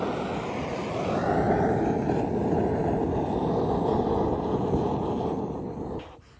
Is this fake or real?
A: real